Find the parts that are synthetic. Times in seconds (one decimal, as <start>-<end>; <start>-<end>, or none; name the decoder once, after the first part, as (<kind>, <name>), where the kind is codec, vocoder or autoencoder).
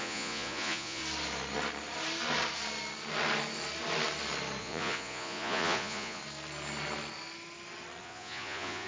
0.0-1.0 (vocoder, Vocos); 4.6-6.2; 8.0-8.9